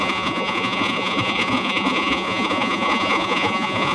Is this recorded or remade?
remade